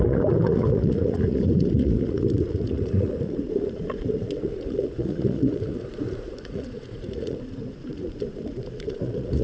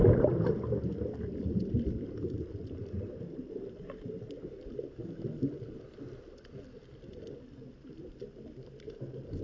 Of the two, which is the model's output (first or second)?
first